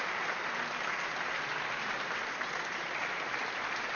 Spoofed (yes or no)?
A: no